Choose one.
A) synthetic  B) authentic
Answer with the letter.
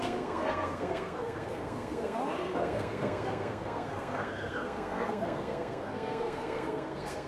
A